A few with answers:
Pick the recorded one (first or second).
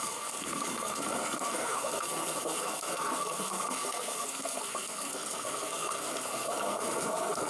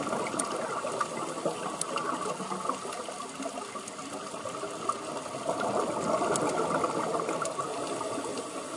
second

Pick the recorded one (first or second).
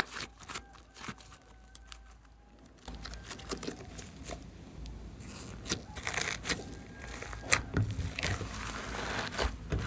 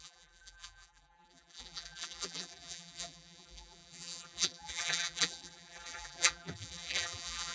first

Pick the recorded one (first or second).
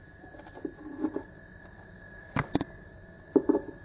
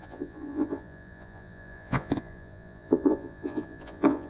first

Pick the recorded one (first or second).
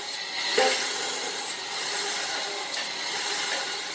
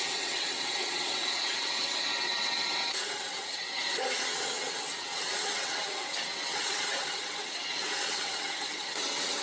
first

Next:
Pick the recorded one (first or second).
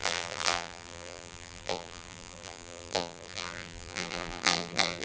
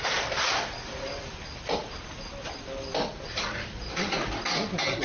second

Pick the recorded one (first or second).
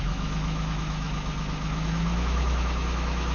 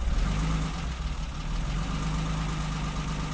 second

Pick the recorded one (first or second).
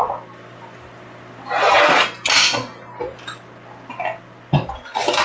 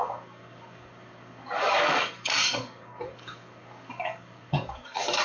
first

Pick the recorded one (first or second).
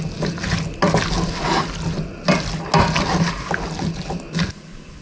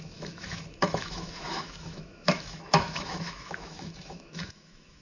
first